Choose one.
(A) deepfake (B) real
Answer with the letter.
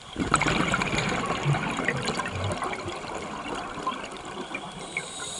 B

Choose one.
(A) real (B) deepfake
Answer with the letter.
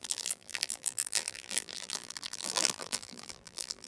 B